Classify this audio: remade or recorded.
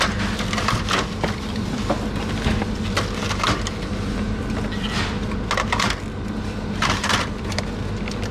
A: recorded